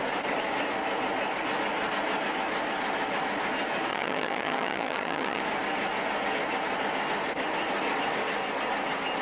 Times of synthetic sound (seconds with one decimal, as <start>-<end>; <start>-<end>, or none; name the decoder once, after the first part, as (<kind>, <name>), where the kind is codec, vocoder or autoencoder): 3.9-5.4 (vocoder, HiFi-GAN)